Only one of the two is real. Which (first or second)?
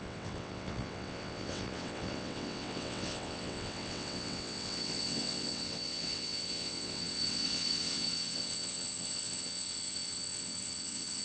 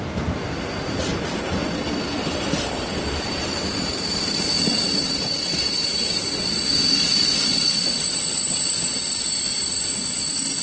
second